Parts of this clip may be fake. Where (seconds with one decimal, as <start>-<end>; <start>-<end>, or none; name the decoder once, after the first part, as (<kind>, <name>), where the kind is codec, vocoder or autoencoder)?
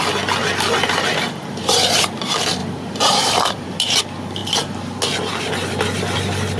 2.6-4.0 (vocoder, BigVGAN v2)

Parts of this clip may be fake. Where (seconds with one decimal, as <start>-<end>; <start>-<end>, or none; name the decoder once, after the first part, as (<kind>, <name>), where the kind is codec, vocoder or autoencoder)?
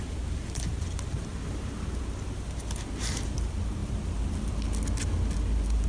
1.3-2.0 (vocoder, BigVGAN v2)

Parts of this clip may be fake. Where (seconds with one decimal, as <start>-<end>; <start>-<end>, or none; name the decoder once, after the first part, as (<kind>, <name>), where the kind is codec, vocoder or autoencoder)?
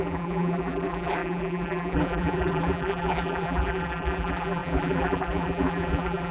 0.0-6.3 (vocoder, BigVGAN v2)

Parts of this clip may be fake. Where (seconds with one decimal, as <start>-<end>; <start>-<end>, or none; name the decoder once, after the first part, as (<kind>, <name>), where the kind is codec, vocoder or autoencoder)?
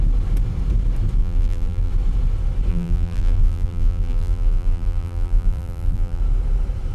1.2-1.9 (vocoder, BigVGAN v2); 2.7-6.2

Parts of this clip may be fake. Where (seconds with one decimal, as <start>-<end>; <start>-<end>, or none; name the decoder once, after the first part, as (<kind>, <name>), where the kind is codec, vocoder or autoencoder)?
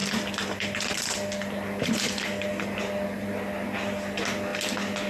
0.0-2.8 (vocoder, BigVGAN v2)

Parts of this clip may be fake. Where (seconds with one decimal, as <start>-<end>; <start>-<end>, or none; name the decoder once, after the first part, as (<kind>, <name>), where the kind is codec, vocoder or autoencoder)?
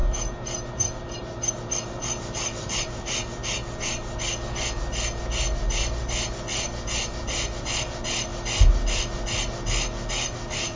0.0-3.4 (vocoder, BigVGAN v2); 7.6-8.3; 10.1-10.8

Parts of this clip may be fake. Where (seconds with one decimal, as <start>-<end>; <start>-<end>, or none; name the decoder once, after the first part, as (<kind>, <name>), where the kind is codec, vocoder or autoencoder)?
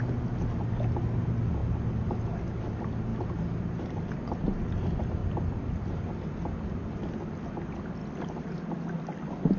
3.1-4.7 (vocoder, BigVGAN v2); 5.2-5.7